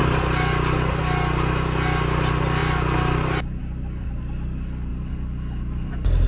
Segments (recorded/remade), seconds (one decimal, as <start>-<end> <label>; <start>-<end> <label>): 0.0-6.3 recorded